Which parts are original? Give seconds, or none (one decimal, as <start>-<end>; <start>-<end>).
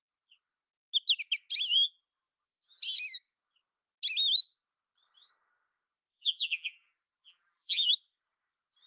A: 0.0-1.7; 2.8-6.1; 7.9-8.9